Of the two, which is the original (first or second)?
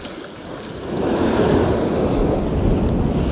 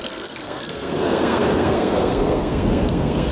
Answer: first